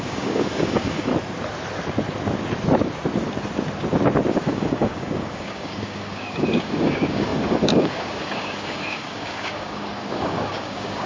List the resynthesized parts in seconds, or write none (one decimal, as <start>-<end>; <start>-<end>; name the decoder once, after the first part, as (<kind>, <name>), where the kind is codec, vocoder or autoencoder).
0.0-1.1 (codec, DAC); 4.3-11.1